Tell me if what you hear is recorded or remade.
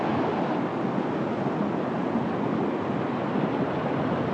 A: recorded